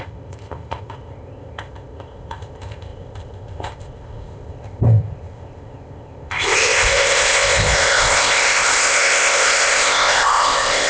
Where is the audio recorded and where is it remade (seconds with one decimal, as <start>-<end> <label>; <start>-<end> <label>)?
0.0-10.9 remade